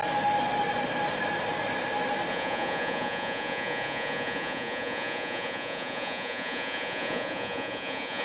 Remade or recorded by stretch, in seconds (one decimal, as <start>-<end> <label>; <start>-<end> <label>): 0.0-2.3 recorded; 2.3-8.2 remade